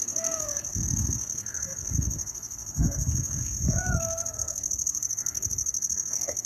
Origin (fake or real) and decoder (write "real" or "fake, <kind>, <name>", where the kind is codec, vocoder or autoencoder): fake, codec, SNAC